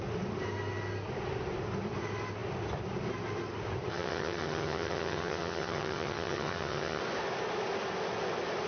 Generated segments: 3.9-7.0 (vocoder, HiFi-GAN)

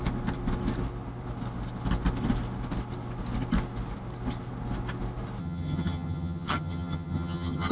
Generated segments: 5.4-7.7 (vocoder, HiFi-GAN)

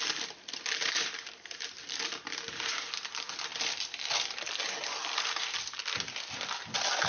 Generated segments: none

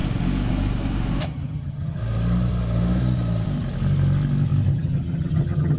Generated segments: 1.2-2.0 (vocoder, HiFi-GAN); 4.7-5.8

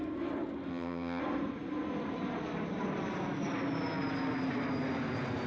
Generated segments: 0.7-1.2 (vocoder, HiFi-GAN)

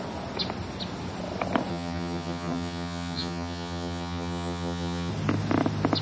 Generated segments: 1.7-5.1 (vocoder, HiFi-GAN)